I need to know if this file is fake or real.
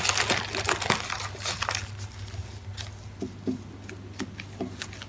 real